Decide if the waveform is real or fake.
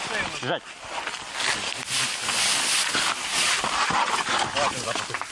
real